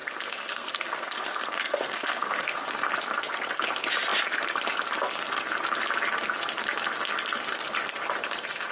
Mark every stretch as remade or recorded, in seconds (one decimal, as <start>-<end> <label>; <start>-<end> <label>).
0.0-2.7 remade; 2.7-8.7 recorded